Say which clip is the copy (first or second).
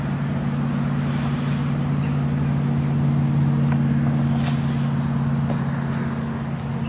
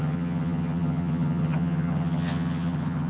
second